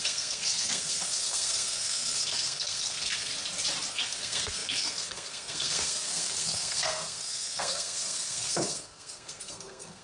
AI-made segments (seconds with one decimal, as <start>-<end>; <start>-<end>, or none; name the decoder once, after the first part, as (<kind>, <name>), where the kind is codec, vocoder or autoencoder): 0.0-3.3 (codec, SNAC); 3.9-10.0